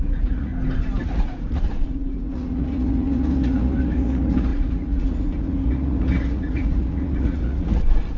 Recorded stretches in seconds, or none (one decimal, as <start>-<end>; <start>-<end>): 0.5-1.0